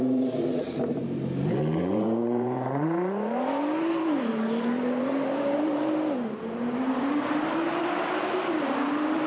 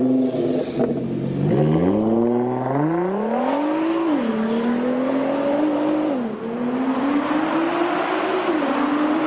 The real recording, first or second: second